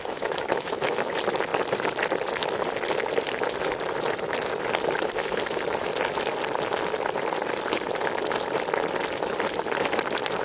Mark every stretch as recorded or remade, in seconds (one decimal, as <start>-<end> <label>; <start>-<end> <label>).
0.0-1.1 remade; 1.1-10.4 recorded